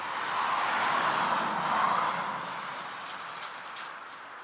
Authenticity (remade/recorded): recorded